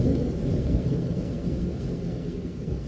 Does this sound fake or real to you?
fake